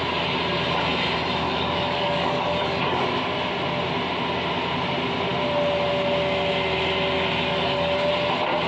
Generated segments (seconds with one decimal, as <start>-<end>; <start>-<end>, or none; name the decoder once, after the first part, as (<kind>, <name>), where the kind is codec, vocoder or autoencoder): 1.4-3.0 (codec, DAC); 7.4-8.1

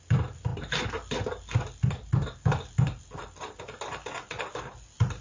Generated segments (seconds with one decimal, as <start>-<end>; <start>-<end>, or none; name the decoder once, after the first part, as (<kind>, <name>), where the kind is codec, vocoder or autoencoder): none

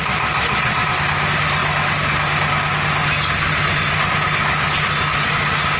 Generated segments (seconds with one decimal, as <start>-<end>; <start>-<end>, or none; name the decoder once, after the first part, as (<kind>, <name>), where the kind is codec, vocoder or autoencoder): none